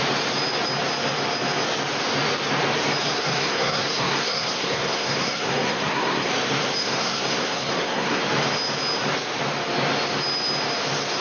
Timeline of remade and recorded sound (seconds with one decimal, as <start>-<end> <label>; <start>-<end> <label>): 0.0-3.0 recorded; 3.0-6.3 remade; 6.3-6.8 recorded; 6.8-8.2 remade; 8.2-11.2 recorded